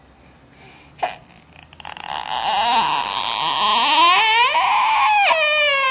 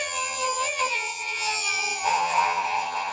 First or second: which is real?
first